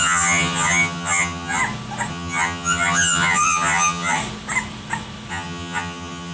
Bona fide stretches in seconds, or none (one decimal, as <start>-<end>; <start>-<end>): 1.6-2.1; 4.2-5.3